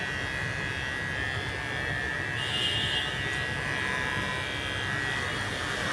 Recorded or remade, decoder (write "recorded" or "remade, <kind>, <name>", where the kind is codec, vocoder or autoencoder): recorded